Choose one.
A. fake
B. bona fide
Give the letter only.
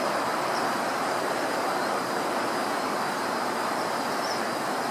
A